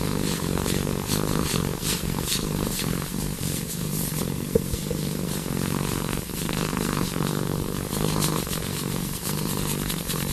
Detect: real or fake fake